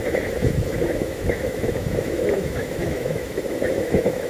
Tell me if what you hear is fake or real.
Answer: fake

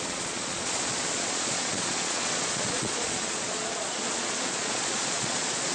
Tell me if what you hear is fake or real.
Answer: fake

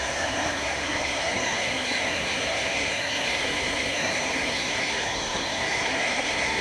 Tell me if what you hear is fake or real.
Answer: fake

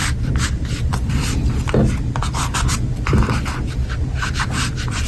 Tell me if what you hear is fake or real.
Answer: fake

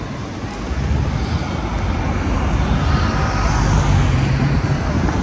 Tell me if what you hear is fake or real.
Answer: real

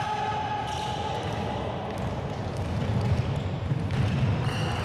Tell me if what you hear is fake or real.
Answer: real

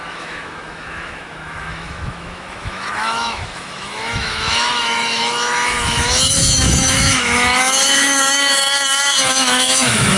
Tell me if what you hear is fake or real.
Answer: fake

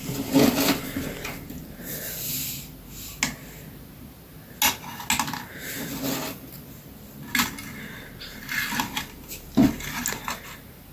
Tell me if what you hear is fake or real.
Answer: real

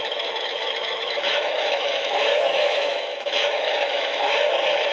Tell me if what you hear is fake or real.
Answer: fake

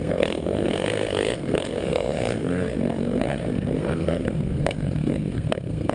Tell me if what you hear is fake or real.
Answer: fake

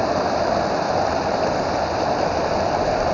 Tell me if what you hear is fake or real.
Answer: real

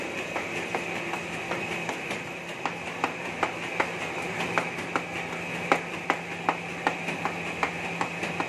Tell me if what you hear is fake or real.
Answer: real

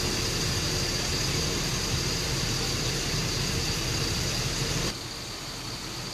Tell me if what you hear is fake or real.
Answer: real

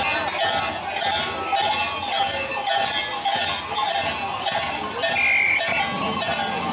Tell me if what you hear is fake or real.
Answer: real